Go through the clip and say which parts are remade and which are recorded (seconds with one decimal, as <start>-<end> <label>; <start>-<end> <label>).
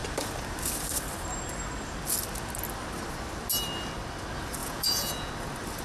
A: 0.0-4.6 recorded; 4.6-5.3 remade; 5.3-5.8 recorded